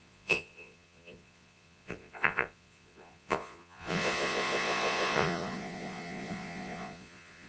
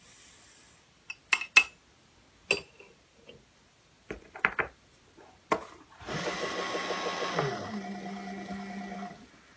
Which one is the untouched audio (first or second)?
second